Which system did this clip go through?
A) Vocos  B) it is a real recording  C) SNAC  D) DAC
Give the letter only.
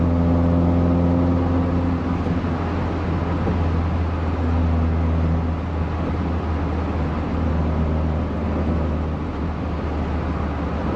B